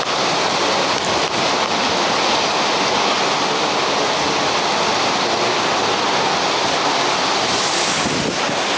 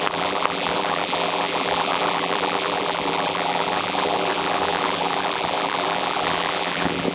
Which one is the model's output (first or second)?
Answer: second